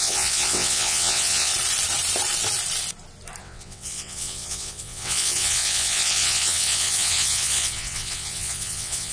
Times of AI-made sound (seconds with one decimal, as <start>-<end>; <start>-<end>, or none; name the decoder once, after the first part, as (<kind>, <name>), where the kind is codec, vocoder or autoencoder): 0.0-1.5 (vocoder, WaveNeXt); 3.4-9.1